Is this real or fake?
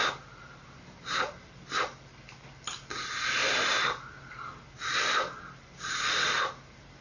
real